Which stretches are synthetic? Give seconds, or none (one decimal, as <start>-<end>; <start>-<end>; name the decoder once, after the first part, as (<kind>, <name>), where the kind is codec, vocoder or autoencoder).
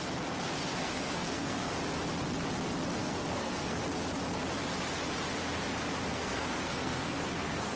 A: 0.7-1.7 (codec, SNAC); 3.0-3.8; 6.1-7.8